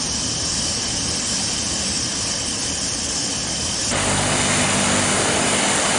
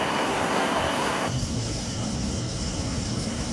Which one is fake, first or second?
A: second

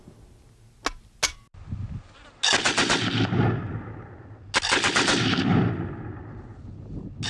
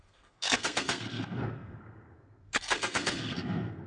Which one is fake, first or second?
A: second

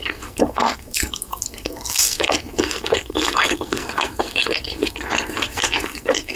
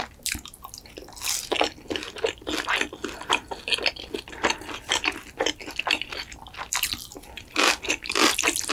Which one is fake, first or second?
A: first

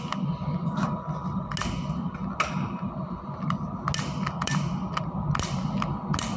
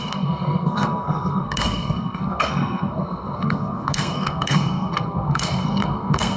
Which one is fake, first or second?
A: second